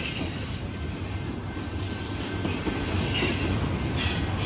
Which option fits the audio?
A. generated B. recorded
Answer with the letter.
B